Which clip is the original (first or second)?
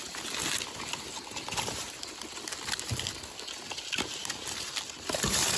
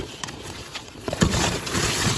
first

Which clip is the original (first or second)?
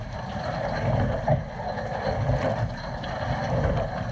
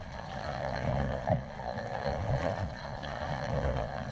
first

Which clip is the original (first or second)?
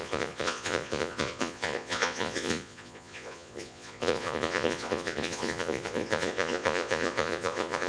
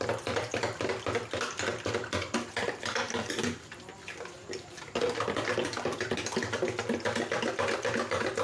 second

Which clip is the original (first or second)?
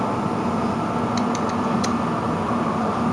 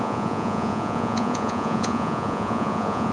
first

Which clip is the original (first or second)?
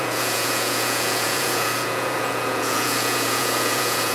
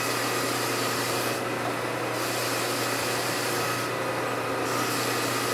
second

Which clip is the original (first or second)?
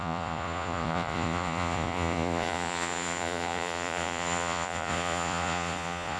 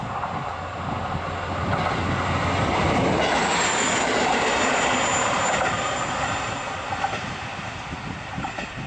second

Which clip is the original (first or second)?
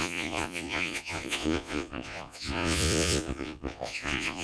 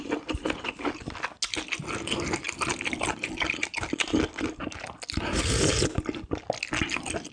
second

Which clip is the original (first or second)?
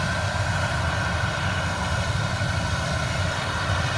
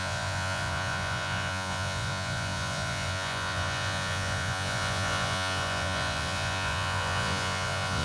first